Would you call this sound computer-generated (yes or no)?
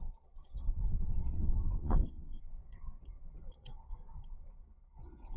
yes